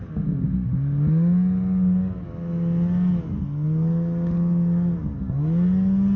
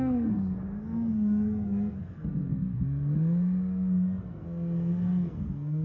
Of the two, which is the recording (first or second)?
first